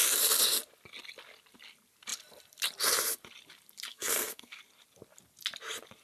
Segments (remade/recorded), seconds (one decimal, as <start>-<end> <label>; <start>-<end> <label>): 0.0-3.9 recorded; 3.9-4.6 remade; 4.6-6.0 recorded